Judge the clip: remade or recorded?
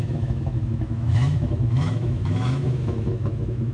remade